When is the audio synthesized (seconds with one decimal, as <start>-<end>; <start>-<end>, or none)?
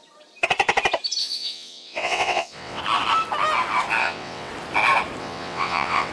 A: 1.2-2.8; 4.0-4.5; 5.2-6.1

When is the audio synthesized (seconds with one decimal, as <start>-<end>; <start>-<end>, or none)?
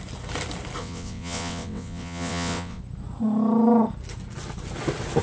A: 0.8-2.8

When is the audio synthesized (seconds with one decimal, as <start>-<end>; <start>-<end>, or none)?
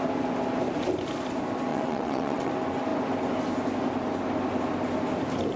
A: 1.7-2.5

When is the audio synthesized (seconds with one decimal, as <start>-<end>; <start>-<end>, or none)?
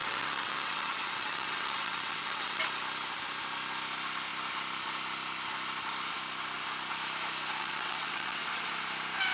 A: 0.0-2.6; 7.6-8.7